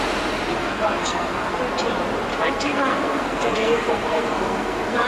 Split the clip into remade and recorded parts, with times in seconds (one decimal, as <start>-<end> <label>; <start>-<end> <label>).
0.0-0.5 recorded; 0.5-1.6 remade; 1.6-2.3 recorded; 2.3-5.1 remade